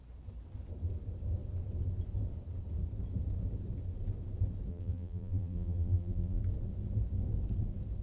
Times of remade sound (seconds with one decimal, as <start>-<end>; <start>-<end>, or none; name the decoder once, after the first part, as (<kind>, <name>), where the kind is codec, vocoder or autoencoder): 4.7-6.4 (vocoder, BigVGAN v2)

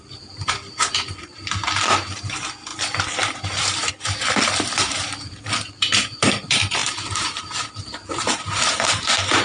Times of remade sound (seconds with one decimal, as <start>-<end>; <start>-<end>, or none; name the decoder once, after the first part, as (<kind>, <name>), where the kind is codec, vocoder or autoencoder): 0.0-9.4 (vocoder, BigVGAN v2)

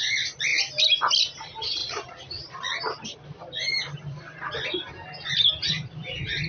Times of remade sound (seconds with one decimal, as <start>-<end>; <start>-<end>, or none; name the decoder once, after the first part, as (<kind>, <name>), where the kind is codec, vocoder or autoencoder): 0.0-0.5 (vocoder, BigVGAN v2); 1.2-6.5

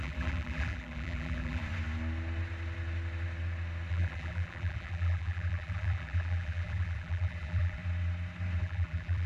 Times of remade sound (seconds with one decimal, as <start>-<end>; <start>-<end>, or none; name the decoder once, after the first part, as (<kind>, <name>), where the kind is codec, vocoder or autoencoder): 0.0-1.6 (vocoder, BigVGAN v2); 3.9-7.8; 8.6-9.3